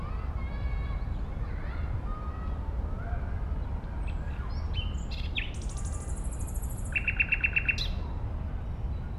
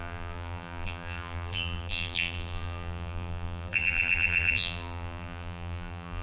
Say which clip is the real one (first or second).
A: first